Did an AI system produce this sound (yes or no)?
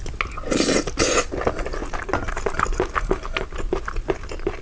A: no